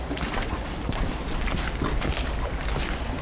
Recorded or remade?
recorded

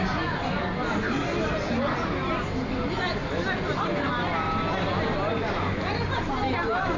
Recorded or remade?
recorded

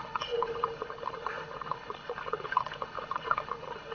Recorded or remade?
remade